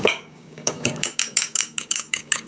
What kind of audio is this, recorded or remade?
remade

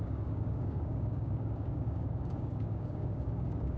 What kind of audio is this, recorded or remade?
remade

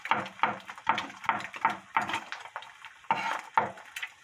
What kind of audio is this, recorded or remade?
recorded